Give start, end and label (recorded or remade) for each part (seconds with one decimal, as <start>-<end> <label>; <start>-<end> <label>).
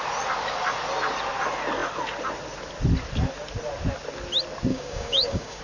0.0-4.7 recorded; 4.7-5.6 remade